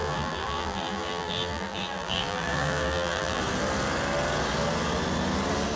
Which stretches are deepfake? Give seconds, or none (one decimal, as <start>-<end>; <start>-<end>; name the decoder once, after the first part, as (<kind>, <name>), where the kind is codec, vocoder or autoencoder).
0.0-3.4 (vocoder, BigVGAN v2)